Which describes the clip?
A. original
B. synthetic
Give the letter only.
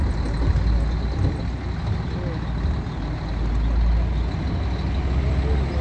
A